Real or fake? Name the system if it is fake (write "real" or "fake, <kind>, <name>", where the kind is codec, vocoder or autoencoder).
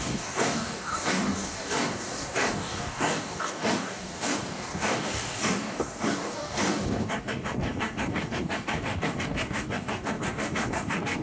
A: fake, codec, DAC